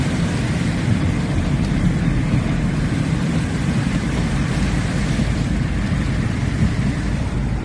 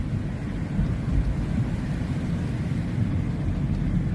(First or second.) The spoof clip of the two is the first